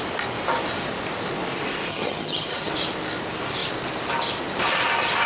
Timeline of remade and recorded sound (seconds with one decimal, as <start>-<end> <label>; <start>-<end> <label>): 0.0-1.9 recorded; 1.9-2.7 remade; 2.7-5.3 recorded